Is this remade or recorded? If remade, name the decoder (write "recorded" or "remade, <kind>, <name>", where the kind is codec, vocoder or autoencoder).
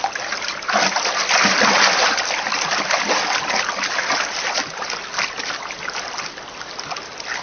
recorded